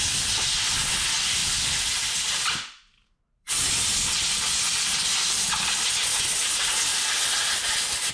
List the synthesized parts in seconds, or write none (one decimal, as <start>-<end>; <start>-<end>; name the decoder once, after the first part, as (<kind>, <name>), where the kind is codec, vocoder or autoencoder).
1.4-2.6 (vocoder, BigVGAN v2); 3.0-5.6; 6.9-8.1